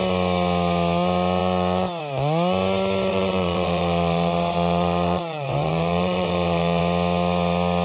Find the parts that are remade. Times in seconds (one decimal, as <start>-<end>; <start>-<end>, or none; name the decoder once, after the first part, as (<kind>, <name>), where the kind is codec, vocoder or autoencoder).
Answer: 3.1-6.8 (vocoder, WaveNeXt)